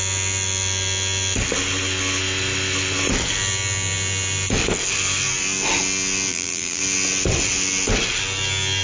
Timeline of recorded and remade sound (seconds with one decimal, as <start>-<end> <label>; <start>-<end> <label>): 0.0-6.3 recorded; 6.3-6.8 remade; 6.8-8.8 recorded